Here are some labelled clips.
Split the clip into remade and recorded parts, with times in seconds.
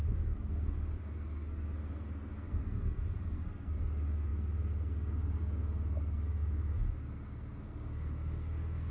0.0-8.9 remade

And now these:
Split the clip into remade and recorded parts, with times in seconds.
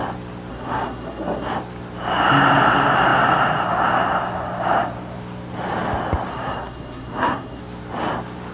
0.0-0.5 recorded; 0.5-1.5 remade; 1.5-6.3 recorded; 6.3-7.6 remade; 7.6-8.5 recorded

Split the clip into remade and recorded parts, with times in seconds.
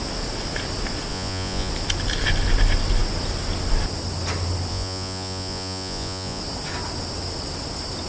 0.0-1.1 recorded; 1.1-1.7 remade; 1.7-4.7 recorded; 4.7-6.4 remade; 6.4-8.1 recorded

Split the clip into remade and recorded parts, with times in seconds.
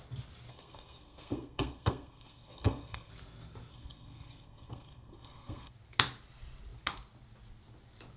0.0-0.5 recorded; 0.5-3.1 remade; 3.1-3.7 recorded; 3.7-5.7 remade; 5.7-8.2 recorded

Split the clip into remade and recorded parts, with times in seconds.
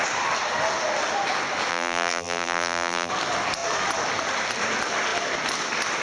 0.0-1.7 recorded; 1.7-3.1 remade; 3.1-6.0 recorded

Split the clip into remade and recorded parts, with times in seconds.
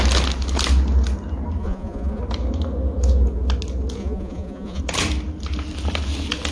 0.0-1.6 recorded; 1.6-2.2 remade; 2.2-4.0 recorded; 4.0-4.8 remade; 4.8-6.5 recorded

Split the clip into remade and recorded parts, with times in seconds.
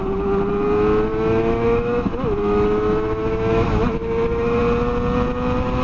0.0-1.1 recorded; 1.1-4.6 remade; 4.6-5.8 recorded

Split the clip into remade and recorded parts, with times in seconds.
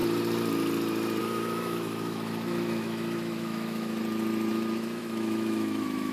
0.0-1.2 recorded; 1.2-4.0 remade; 4.0-4.5 recorded; 4.5-6.1 remade